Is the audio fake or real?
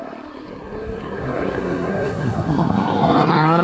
fake